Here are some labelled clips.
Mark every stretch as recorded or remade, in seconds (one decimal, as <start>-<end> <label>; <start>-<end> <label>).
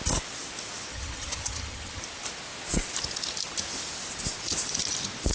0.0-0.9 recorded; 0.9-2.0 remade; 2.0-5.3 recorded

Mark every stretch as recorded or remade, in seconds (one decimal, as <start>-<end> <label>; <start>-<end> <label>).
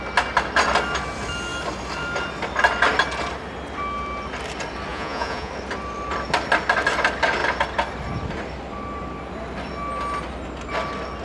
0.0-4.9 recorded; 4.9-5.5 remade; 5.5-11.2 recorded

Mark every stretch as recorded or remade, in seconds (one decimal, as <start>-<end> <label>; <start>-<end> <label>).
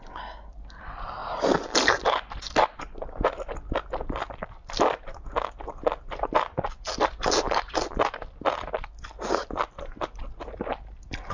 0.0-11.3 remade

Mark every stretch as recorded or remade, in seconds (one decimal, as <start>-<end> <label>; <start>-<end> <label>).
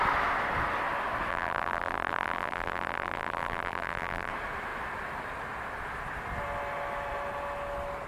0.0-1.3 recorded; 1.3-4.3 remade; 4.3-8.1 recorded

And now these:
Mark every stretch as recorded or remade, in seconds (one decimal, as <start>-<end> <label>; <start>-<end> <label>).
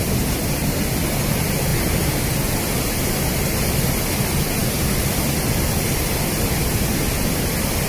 0.0-7.9 recorded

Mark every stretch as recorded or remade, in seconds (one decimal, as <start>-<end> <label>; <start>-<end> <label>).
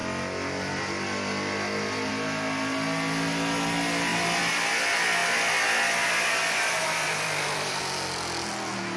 0.0-6.8 recorded; 6.8-7.8 remade; 7.8-9.0 recorded